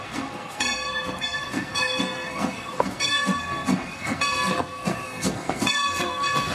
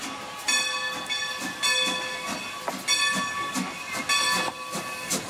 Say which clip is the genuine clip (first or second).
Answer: second